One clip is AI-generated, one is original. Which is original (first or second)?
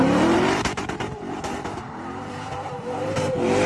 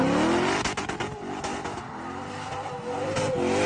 second